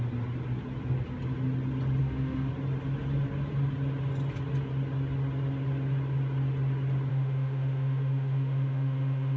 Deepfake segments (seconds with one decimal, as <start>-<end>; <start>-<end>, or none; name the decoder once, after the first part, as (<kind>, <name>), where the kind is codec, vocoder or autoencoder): 2.0-2.5 (autoencoder, DAC-VAE); 7.1-9.4